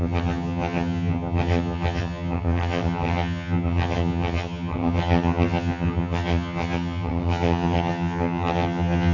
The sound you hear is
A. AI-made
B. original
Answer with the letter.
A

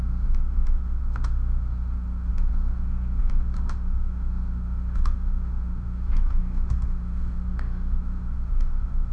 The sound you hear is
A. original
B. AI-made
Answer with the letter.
B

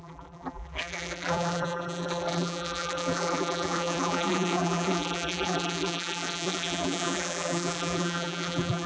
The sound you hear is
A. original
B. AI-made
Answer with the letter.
B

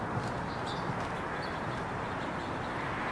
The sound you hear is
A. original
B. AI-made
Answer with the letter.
A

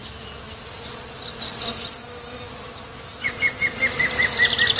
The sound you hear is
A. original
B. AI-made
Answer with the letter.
A